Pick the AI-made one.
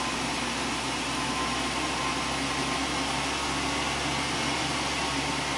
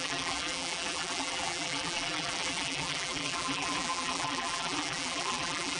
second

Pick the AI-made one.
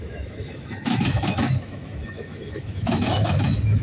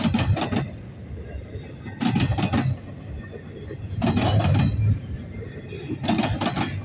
first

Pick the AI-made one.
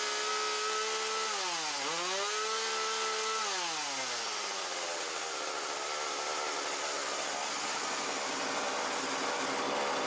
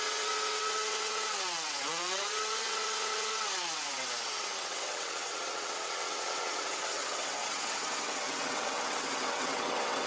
second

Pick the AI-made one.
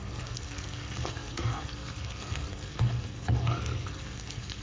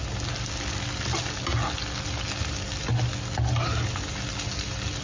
first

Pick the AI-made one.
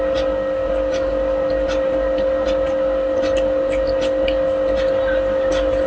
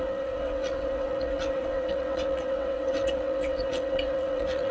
second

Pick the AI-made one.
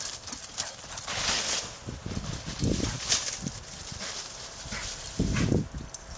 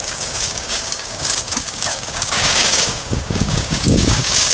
second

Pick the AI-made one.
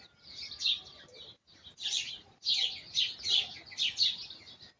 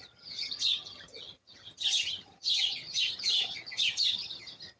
second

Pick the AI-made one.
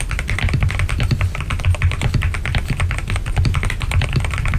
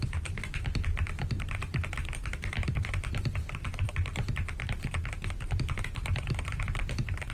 second